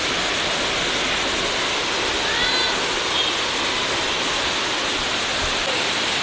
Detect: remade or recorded recorded